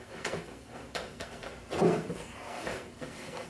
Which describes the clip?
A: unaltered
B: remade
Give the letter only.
B